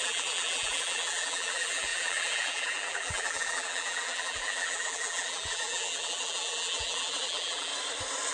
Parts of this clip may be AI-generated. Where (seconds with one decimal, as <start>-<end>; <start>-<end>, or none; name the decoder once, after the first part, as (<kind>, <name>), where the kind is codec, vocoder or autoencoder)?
0.0-7.7 (vocoder, BigVGAN v2)